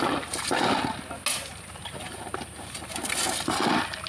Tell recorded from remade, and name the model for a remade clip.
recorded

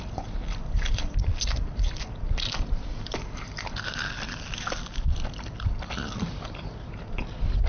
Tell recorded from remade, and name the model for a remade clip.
recorded